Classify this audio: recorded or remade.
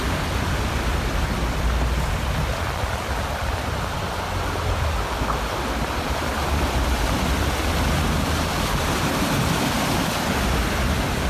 remade